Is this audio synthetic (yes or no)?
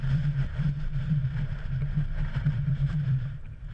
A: yes